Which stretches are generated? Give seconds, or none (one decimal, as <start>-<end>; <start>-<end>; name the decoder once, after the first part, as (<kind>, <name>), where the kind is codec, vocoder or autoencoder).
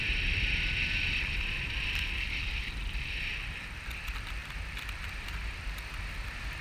0.0-6.6 (vocoder, BigVGAN v2)